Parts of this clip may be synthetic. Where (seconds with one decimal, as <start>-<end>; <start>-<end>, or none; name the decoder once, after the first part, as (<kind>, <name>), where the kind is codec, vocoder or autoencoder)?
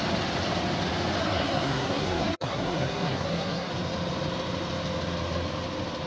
1.2-3.7 (codec, SNAC)